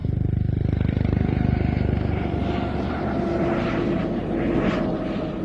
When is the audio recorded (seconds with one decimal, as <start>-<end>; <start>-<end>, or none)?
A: 3.2-4.2